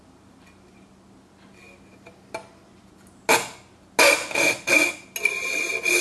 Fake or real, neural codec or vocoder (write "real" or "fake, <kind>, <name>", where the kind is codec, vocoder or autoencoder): real